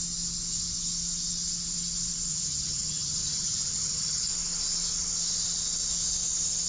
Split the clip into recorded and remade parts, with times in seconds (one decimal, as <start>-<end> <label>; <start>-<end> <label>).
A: 0.0-2.3 recorded; 2.3-4.3 remade; 4.3-6.7 recorded

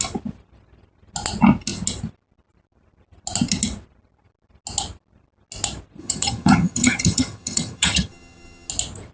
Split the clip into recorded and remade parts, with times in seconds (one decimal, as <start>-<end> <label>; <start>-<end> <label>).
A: 0.0-6.0 recorded; 6.0-8.7 remade; 8.7-9.1 recorded